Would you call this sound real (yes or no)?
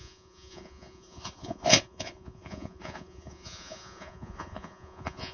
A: no